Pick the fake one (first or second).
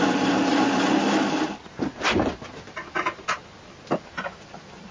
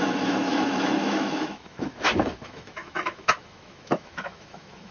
second